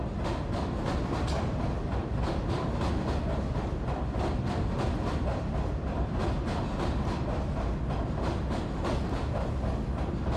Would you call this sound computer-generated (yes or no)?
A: no